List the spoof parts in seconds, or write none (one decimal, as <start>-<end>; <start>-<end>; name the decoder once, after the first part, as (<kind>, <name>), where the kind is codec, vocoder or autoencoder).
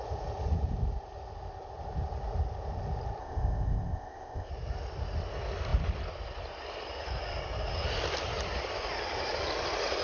3.2-4.5 (codec, ZipCodec)